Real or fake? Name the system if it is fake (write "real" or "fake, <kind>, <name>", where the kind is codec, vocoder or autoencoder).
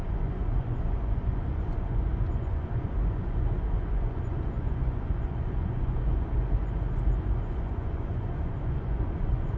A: fake, vocoder, Vocos